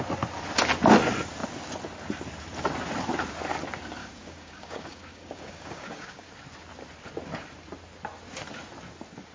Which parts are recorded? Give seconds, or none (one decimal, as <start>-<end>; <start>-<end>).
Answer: 0.0-4.0; 6.3-9.3